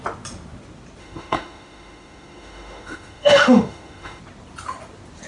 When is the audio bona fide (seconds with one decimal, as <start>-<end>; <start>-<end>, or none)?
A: 0.0-1.0; 4.2-5.3